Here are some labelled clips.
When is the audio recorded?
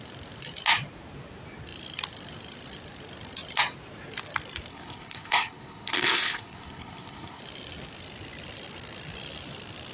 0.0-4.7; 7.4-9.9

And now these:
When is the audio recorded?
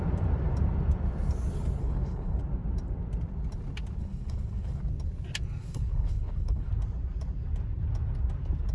0.0-1.8; 2.4-4.0; 4.8-5.6; 6.7-8.7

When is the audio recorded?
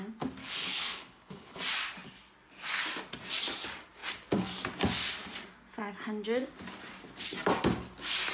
0.0-0.4; 1.6-8.3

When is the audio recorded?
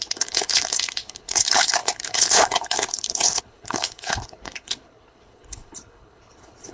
none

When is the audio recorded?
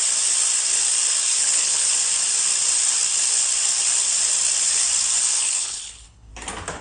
0.0-1.4; 1.9-5.3; 6.3-6.8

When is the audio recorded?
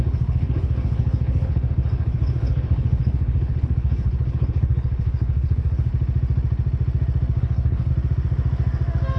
5.9-7.4; 7.9-9.2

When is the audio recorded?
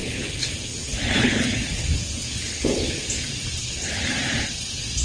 3.0-3.6; 4.1-5.0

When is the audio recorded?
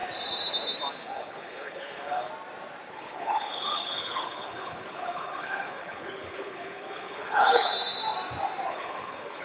0.0-0.9; 2.3-2.9; 7.7-8.7